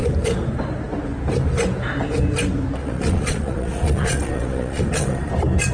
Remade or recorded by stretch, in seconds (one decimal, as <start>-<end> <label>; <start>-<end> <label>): 0.0-2.8 recorded; 2.8-5.3 remade; 5.3-5.7 recorded